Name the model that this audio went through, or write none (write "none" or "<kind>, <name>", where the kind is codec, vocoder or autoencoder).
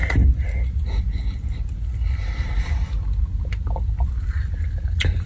none